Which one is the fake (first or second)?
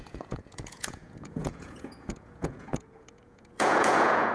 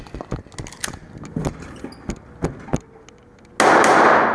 first